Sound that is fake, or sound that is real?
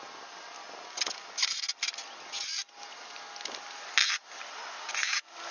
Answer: real